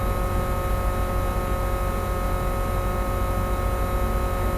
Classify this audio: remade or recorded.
recorded